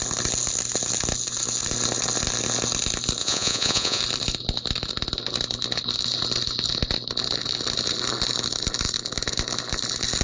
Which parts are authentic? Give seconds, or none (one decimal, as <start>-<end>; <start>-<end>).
0.0-3.2; 4.0-10.2